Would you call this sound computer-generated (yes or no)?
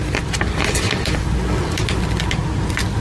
no